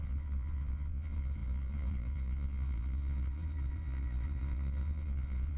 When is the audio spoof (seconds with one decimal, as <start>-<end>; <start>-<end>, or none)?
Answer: 0.0-5.6